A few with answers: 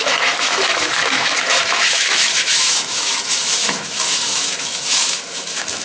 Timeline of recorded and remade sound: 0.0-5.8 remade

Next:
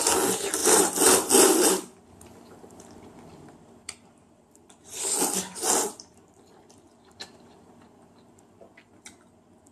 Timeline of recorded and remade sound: 0.0-0.6 recorded; 0.6-2.9 remade; 2.9-3.3 recorded; 3.3-7.7 remade; 7.7-9.7 recorded

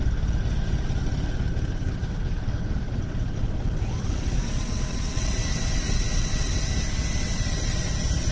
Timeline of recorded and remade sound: 0.0-1.7 recorded; 1.7-6.7 remade; 6.7-7.2 recorded; 7.2-7.9 remade; 7.9-8.3 recorded

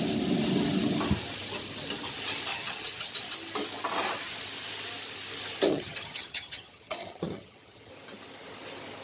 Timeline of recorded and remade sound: 0.0-2.5 recorded; 2.5-3.1 remade; 3.1-5.7 recorded; 5.7-7.9 remade; 7.9-9.0 recorded

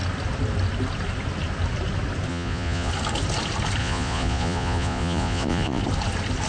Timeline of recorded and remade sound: 0.0-2.3 recorded; 2.3-2.9 remade; 2.9-3.8 recorded; 3.8-5.8 remade; 5.8-6.5 recorded